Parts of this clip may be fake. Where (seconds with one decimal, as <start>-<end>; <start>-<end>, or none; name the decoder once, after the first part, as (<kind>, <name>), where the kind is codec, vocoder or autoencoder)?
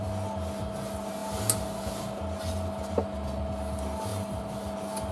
4.1-5.1 (vocoder, BigVGAN v2)